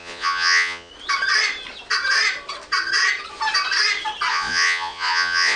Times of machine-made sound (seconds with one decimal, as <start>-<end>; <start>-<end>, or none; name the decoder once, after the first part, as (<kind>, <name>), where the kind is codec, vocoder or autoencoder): 0.0-0.9 (vocoder, Vocos); 4.3-5.6